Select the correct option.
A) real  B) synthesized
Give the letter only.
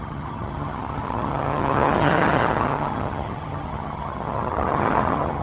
B